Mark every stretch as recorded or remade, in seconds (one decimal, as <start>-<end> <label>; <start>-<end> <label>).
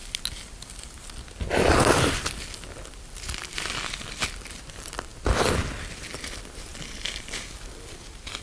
0.0-6.7 remade; 6.7-8.4 recorded